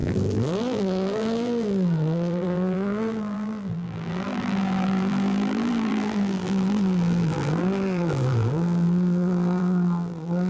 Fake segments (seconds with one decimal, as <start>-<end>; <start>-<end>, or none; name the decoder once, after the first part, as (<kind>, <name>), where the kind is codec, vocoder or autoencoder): 0.0-10.5 (vocoder, BigVGAN v2)